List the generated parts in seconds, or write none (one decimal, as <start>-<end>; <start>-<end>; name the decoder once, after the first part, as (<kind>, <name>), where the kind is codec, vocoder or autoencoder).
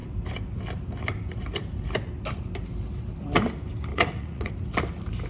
3.9-4.5 (vocoder, Vocos)